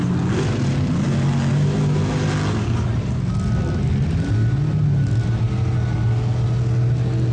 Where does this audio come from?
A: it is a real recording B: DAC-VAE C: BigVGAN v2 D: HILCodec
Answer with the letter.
A